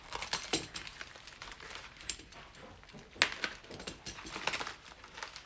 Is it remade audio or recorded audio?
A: recorded